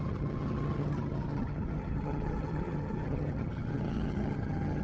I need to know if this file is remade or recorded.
remade